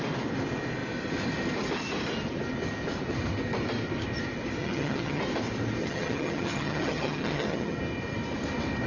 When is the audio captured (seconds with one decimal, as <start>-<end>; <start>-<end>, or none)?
0.0-4.6; 5.2-5.8; 7.8-8.9